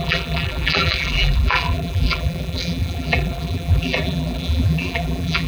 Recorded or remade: remade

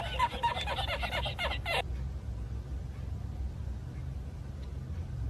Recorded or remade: recorded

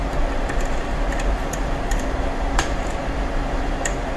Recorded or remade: remade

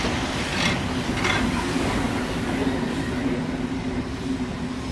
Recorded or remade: recorded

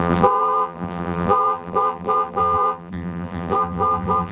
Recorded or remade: remade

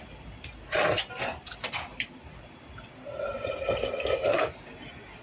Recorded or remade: recorded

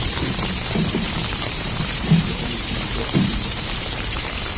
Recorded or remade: remade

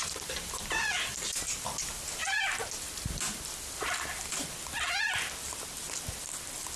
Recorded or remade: recorded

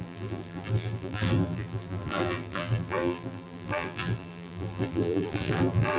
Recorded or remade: remade